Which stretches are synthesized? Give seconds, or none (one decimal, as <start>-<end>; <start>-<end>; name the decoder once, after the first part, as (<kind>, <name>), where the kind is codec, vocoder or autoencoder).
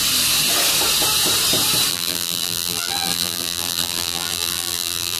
1.9-5.2 (vocoder, BigVGAN v2)